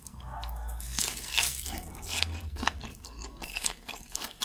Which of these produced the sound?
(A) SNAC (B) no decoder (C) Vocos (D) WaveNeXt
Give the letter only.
A